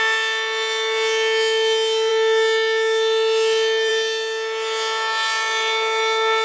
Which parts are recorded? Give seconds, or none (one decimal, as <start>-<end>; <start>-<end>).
0.0-6.4